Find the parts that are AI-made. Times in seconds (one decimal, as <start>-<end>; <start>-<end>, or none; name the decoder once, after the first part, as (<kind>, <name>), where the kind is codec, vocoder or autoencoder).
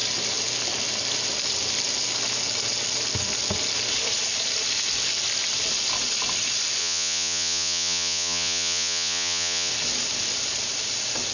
6.8-9.7 (vocoder, Vocos)